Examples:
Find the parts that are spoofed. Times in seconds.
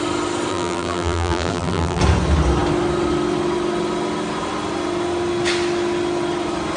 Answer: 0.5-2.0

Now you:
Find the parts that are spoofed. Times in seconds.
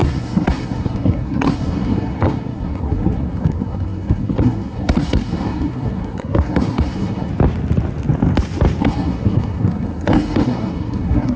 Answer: 0.0-7.3; 8.8-11.4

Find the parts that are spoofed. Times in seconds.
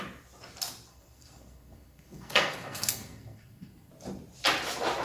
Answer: 0.9-3.9